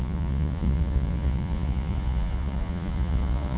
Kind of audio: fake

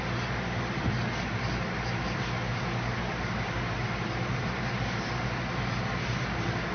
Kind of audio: real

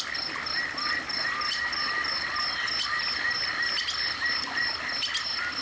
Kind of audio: real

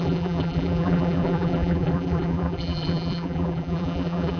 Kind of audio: fake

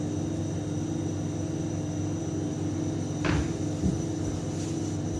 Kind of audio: real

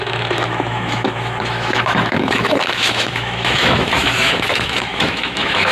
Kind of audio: fake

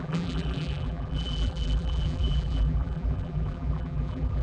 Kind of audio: fake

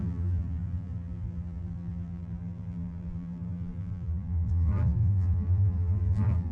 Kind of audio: fake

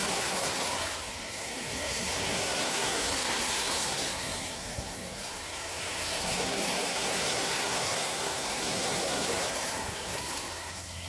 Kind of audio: fake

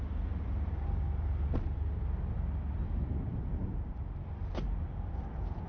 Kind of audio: fake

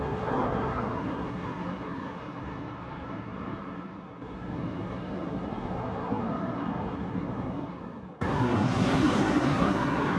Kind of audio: fake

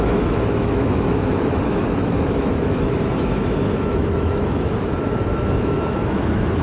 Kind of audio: fake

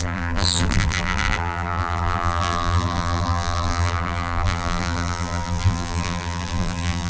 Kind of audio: fake